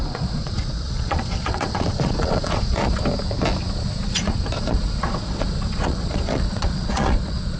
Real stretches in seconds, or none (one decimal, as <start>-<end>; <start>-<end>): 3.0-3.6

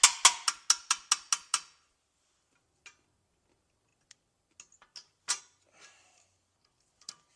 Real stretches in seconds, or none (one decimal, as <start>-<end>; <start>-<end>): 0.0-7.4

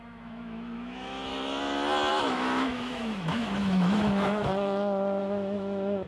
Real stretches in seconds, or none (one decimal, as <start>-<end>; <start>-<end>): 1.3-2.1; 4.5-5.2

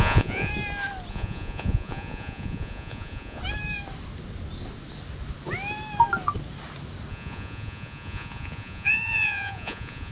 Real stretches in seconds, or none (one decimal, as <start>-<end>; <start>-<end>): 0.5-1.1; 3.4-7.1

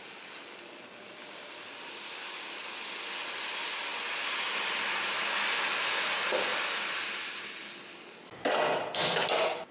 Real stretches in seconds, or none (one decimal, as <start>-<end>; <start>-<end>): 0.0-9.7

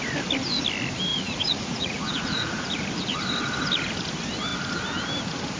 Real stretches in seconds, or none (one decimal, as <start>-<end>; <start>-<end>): 0.0-1.1; 2.6-5.6

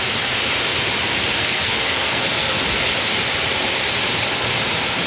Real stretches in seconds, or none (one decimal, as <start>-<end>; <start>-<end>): 0.0-1.3; 2.6-5.1

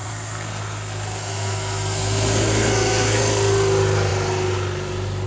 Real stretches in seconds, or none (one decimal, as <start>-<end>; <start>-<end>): 3.2-5.3